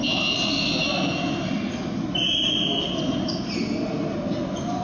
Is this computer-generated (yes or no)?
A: no